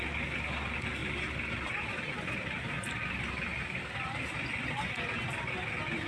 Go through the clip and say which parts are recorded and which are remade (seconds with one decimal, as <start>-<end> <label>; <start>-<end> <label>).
0.0-1.0 recorded; 1.0-4.7 remade; 4.7-6.1 recorded